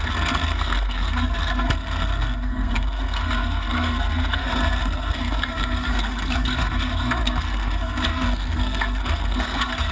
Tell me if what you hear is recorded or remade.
remade